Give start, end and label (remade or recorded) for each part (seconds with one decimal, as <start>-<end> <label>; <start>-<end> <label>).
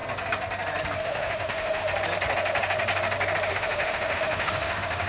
0.0-1.0 recorded; 1.0-1.8 remade; 1.8-3.5 recorded; 3.5-5.1 remade